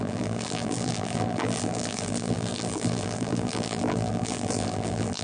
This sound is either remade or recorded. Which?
remade